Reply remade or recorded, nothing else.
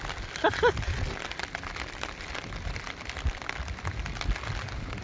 recorded